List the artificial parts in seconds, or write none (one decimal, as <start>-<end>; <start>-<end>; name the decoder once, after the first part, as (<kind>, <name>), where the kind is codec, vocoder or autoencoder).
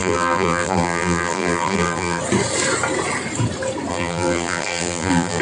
0.0-2.2 (vocoder, BigVGAN v2); 3.9-5.4